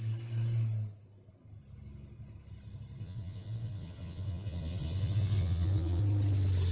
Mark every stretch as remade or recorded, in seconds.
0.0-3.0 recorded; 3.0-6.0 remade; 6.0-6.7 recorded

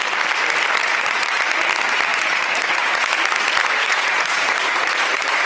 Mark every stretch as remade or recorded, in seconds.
0.0-0.8 recorded; 0.8-1.5 remade; 1.5-2.1 recorded; 2.1-3.1 remade; 3.1-3.8 recorded; 3.8-5.5 remade

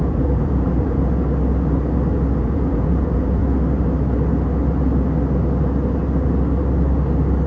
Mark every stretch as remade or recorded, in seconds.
0.0-1.1 remade; 1.1-2.4 recorded; 2.4-3.4 remade; 3.4-7.5 recorded

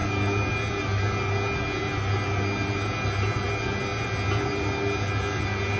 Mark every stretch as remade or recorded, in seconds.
0.0-5.8 recorded

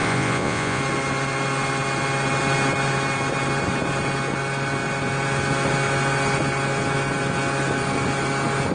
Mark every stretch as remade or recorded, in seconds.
0.0-0.8 remade; 0.8-8.7 recorded